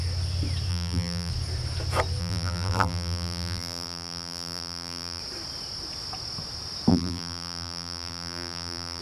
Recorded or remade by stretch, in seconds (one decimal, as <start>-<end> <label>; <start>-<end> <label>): 0.0-0.7 recorded; 0.7-1.3 remade; 1.3-2.2 recorded; 2.2-5.2 remade; 5.2-6.9 recorded; 6.9-9.0 remade